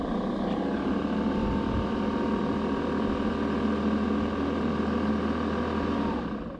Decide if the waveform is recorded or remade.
recorded